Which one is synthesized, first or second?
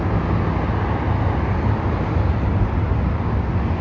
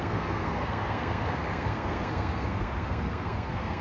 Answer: second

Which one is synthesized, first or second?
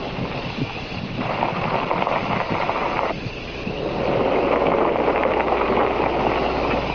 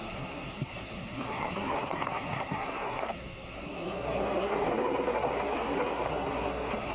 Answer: second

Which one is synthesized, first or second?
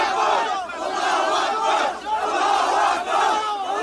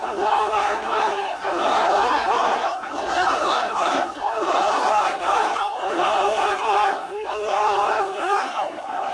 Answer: second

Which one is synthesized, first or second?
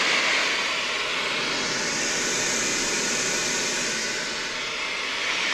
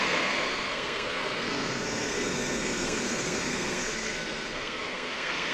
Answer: second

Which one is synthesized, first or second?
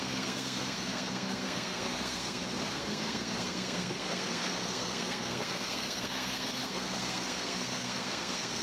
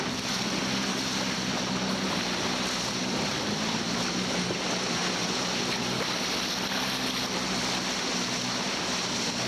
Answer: first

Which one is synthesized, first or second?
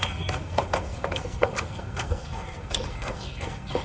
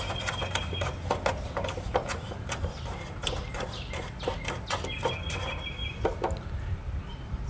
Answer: first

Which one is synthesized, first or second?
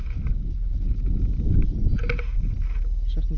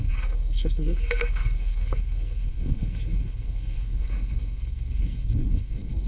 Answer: second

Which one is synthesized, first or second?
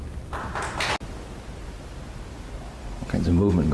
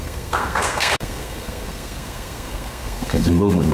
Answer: second